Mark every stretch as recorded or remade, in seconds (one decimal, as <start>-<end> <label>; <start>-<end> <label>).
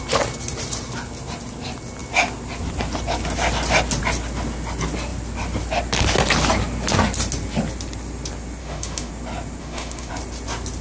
0.0-8.6 recorded; 8.6-9.1 remade; 9.1-9.6 recorded; 9.6-10.1 remade; 10.1-10.8 recorded